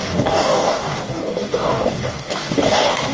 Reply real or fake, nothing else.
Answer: fake